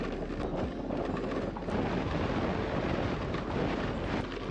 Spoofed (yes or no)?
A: no